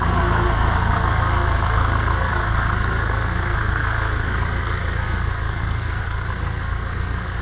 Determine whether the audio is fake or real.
fake